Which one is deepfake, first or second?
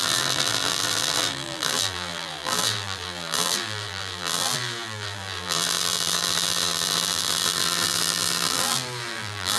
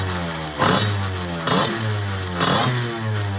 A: first